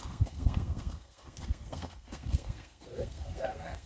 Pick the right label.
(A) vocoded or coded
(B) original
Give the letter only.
A